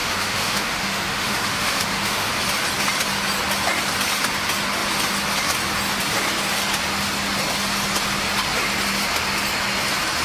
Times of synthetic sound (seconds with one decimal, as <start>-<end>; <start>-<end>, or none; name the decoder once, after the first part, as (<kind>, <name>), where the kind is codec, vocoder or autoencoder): 0.0-2.3 (autoencoder, DAC-VAE)